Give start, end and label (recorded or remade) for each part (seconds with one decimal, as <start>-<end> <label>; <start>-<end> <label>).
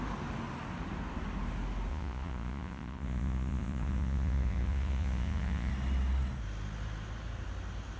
0.0-1.9 recorded; 1.9-5.7 remade; 5.7-8.0 recorded